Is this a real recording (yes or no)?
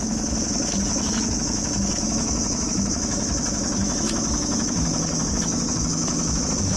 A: no